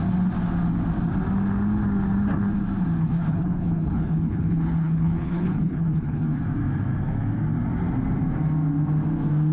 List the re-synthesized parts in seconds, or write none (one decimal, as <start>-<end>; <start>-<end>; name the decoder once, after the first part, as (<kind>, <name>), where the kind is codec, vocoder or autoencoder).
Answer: 3.0-6.4 (codec, HILCodec)